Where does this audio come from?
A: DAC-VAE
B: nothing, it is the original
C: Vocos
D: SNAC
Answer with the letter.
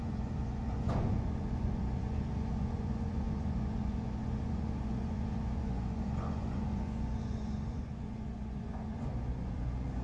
C